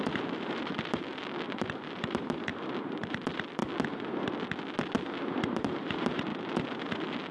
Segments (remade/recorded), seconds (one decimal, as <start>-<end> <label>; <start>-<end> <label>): 0.0-3.6 remade; 3.6-5.4 recorded; 5.4-6.3 remade; 6.3-6.8 recorded; 6.8-7.3 remade